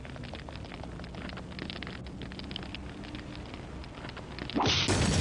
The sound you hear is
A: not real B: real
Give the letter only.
B